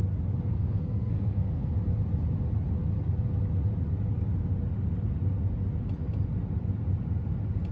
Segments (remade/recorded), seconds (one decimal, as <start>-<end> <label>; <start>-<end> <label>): 0.0-0.5 recorded; 0.5-1.7 remade; 1.7-7.7 recorded